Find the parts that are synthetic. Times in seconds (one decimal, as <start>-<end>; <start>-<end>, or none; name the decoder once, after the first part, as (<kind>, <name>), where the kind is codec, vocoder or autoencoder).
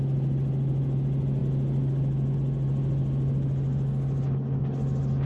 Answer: none